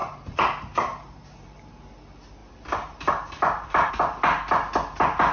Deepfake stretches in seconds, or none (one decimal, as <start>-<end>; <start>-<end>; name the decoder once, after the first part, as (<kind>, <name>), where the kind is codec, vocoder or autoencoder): 0.0-1.8 (vocoder, BigVGAN v2); 2.4-3.9